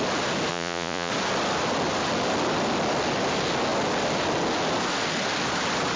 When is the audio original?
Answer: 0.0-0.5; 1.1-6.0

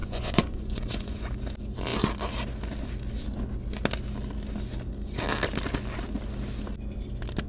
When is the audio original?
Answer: 1.3-7.5

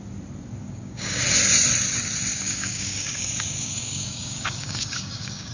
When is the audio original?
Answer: 0.0-0.6; 1.2-2.3

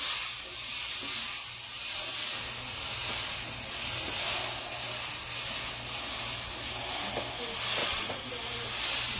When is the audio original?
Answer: 0.0-7.8; 8.3-9.2

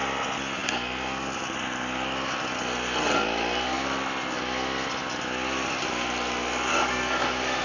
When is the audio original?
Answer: 0.0-6.7

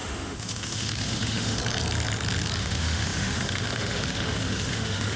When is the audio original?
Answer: 1.6-2.6

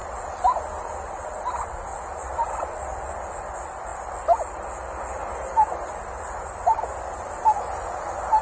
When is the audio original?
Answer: 0.0-8.4